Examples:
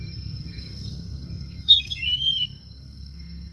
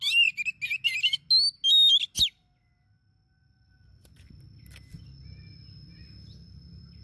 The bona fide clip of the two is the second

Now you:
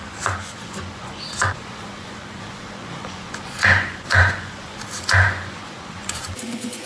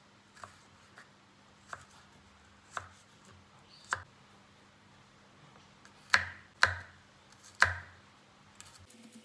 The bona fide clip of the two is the second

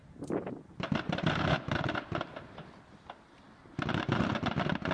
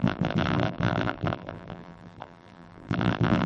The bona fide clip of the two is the first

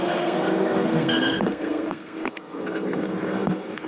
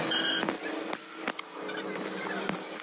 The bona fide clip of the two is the second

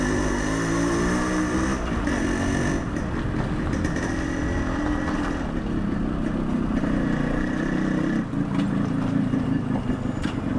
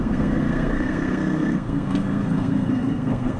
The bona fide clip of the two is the first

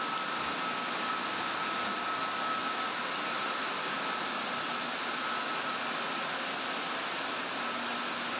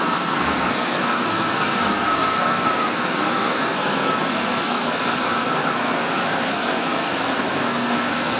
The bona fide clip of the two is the first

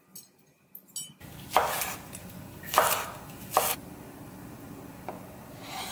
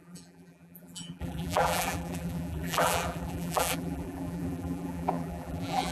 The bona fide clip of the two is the first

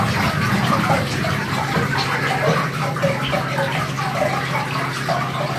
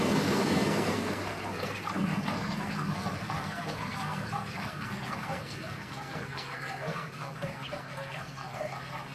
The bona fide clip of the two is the first